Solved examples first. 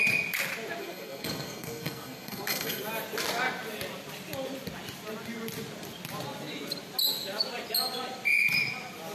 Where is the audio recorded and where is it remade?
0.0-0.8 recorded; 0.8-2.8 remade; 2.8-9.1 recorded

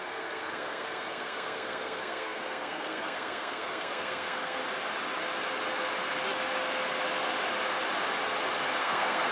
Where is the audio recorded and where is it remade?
0.0-4.6 remade; 4.6-8.8 recorded; 8.8-9.3 remade

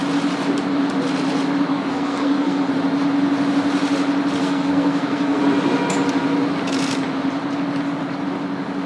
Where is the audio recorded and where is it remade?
0.0-1.7 recorded; 1.7-2.7 remade; 2.7-4.4 recorded; 4.4-5.4 remade; 5.4-8.9 recorded